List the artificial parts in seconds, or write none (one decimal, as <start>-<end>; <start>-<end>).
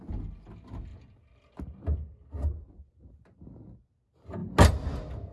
none